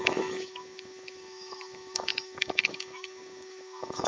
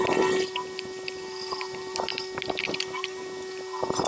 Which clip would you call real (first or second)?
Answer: second